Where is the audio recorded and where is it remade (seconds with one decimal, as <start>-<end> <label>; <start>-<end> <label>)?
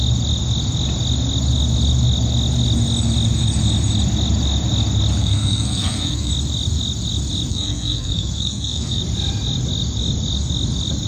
0.0-5.2 recorded; 5.2-6.3 remade; 6.3-7.5 recorded; 7.5-9.0 remade; 9.0-11.1 recorded